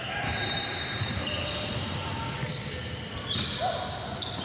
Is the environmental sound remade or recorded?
recorded